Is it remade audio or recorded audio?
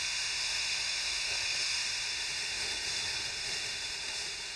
remade